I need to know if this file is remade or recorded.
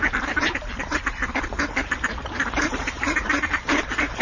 remade